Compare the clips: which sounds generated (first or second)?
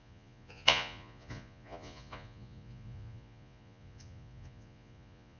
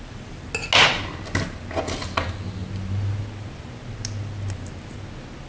first